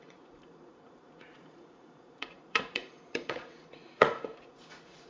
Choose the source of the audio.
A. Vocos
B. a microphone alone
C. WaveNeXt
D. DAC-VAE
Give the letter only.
A